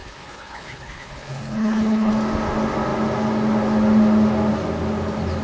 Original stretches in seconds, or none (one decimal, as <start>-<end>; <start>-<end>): 2.1-5.4